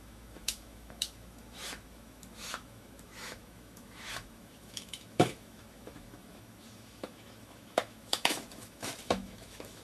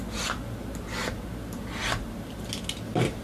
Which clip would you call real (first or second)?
second